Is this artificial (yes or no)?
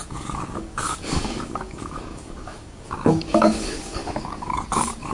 yes